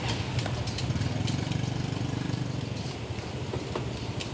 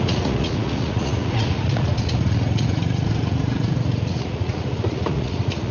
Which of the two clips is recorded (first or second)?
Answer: first